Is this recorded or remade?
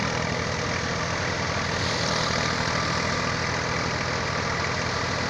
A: recorded